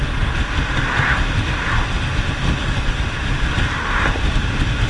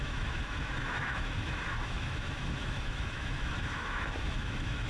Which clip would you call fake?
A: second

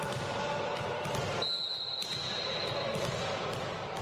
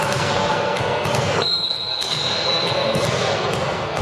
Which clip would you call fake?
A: second